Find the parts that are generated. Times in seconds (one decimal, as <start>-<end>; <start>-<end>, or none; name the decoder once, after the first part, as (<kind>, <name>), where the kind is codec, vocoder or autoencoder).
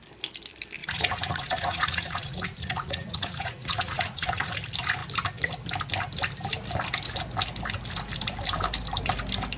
0.8-4.5 (vocoder, Vocos)